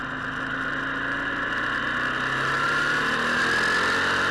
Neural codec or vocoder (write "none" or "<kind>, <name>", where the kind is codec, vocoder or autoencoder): none